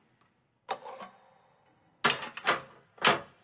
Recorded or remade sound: recorded